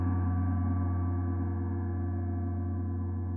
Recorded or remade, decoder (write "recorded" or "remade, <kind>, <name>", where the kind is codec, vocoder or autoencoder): recorded